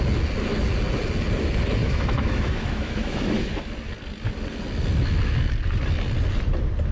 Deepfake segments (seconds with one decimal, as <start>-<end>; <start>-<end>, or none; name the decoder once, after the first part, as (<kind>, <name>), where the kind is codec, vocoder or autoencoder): 1.8-3.7 (autoencoder, DAC-VAE)